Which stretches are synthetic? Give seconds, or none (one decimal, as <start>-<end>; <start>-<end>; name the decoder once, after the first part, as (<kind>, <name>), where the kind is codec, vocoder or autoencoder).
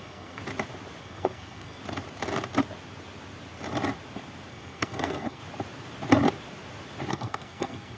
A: 0.0-0.4 (codec, SNAC); 1.0-1.8; 4.5-5.4; 7.1-8.0